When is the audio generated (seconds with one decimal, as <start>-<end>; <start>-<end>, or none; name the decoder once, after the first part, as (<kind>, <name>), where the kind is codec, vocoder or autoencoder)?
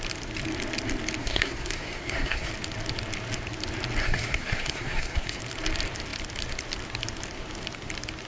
1.2-2.5 (codec, SNAC); 4.0-5.4